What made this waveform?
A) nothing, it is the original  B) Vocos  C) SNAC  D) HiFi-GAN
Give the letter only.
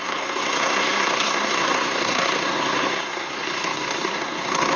C